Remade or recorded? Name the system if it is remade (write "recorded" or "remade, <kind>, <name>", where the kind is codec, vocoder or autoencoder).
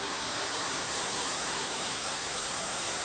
remade, codec, SNAC